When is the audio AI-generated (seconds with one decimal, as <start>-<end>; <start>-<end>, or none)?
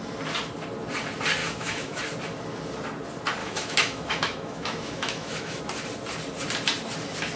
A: 1.4-2.0; 3.4-5.6